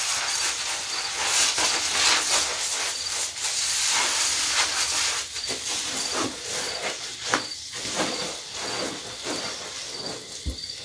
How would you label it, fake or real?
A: real